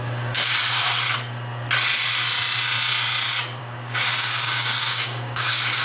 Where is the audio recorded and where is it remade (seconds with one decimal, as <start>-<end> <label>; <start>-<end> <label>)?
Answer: 0.0-0.6 remade; 0.6-3.6 recorded; 3.6-5.8 remade